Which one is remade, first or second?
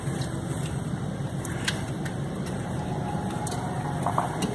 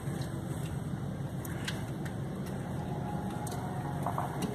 first